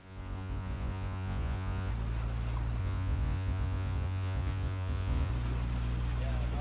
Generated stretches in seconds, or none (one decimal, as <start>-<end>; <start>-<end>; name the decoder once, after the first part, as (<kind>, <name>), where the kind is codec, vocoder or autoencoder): 0.0-1.9 (vocoder, Vocos); 2.8-5.3